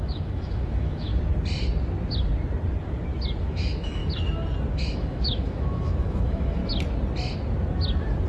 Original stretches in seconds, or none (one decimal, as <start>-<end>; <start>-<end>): 1.1-3.4; 4.0-4.7; 6.6-8.3

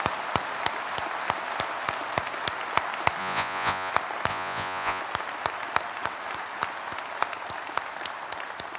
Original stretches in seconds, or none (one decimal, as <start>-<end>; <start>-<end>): 0.0-3.2; 3.9-4.3; 5.0-8.8

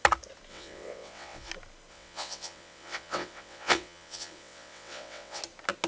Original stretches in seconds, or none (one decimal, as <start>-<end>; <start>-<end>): 0.0-0.5; 1.5-1.9; 5.4-5.9

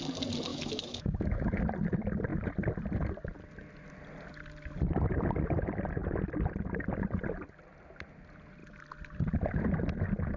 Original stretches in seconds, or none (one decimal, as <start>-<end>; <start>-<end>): 0.0-0.5; 1.6-10.4

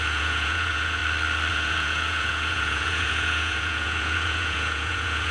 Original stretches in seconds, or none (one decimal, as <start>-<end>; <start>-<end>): 1.0-1.5

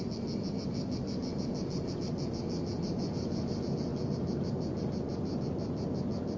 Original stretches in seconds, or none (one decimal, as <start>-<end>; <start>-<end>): 0.0-6.4